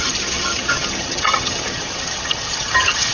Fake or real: fake